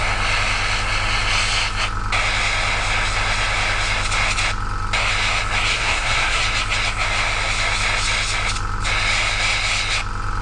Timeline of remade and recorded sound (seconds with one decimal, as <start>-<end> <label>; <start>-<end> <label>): 0.0-5.7 recorded; 5.7-6.4 remade; 6.4-10.4 recorded